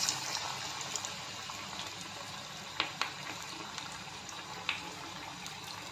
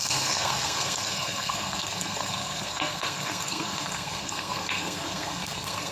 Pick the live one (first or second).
first